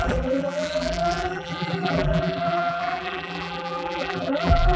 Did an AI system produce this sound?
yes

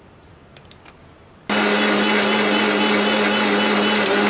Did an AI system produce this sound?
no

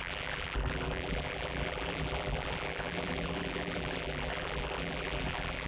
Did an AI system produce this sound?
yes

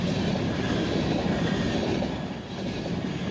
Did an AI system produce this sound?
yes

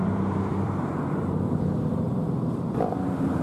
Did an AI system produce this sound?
yes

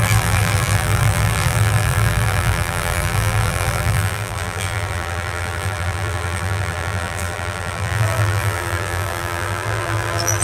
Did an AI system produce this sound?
yes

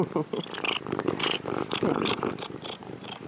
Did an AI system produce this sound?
yes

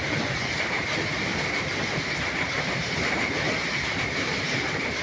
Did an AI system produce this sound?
yes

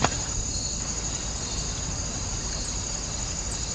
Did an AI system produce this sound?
no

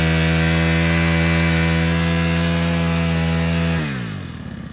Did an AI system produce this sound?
no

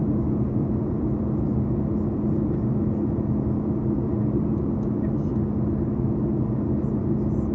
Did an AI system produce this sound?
no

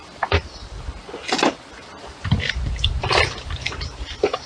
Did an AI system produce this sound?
yes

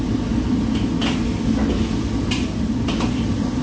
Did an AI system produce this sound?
no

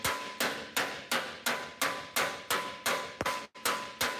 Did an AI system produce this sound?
no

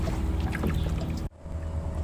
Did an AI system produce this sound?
no